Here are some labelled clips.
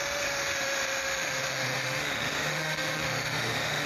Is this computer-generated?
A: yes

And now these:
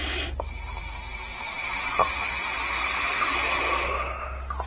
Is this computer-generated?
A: no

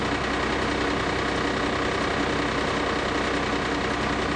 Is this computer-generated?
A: no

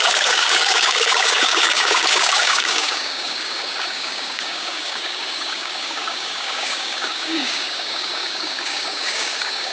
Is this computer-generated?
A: yes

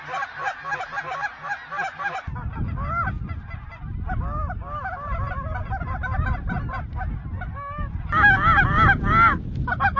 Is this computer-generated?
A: no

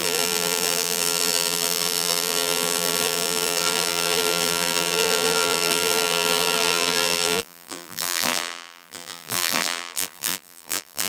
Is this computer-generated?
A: yes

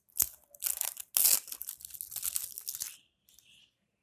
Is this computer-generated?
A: no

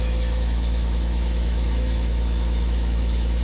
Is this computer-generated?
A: yes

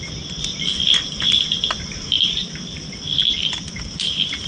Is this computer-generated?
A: no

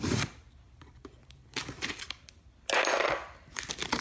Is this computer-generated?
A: yes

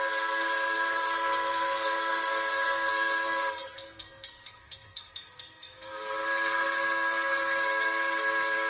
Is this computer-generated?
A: yes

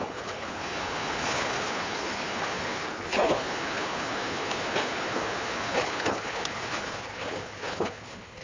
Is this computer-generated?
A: yes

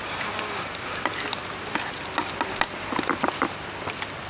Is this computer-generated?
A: no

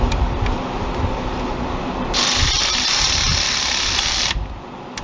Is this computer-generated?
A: no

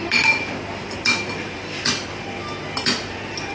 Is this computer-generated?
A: no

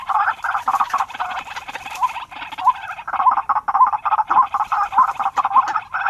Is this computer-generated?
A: no